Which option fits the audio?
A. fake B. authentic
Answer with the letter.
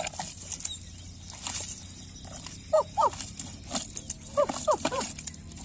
B